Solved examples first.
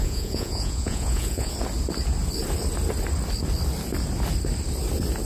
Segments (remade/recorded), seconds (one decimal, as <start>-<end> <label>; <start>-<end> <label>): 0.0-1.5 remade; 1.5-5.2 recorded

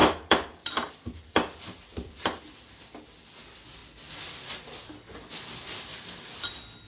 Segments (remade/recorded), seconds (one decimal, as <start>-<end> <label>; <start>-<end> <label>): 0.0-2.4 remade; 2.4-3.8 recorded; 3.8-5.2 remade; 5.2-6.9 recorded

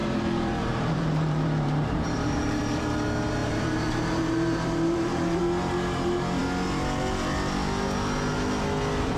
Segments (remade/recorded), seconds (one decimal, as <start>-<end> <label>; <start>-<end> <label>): 0.0-2.6 remade; 2.6-3.4 recorded; 3.4-5.4 remade; 5.4-9.2 recorded